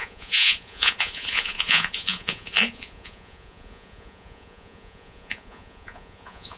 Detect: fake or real fake